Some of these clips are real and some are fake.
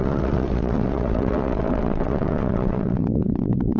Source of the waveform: fake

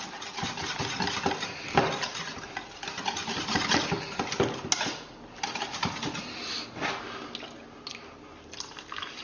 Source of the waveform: real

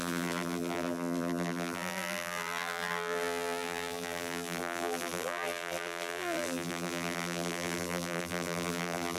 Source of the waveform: fake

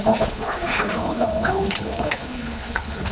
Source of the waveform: fake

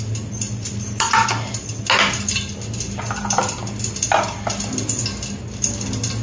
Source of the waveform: real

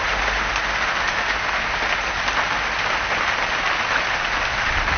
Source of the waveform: real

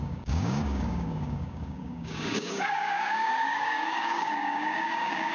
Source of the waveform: fake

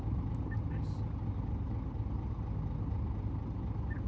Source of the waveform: real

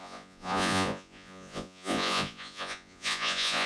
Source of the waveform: fake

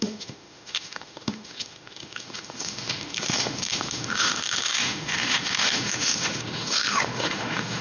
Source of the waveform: fake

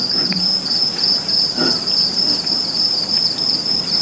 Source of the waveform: real